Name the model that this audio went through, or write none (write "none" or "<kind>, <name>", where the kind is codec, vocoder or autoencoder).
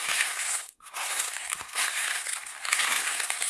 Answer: codec, SNAC